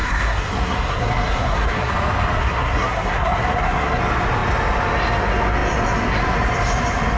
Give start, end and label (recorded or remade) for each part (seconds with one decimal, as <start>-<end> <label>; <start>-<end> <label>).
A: 0.0-1.9 remade; 1.9-2.4 recorded; 2.4-4.0 remade; 4.0-7.2 recorded